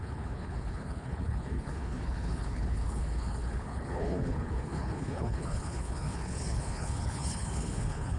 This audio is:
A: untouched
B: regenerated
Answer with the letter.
B